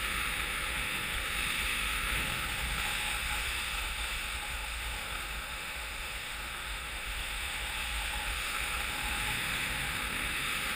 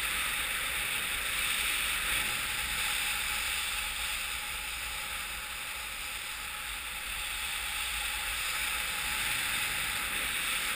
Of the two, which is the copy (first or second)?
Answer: first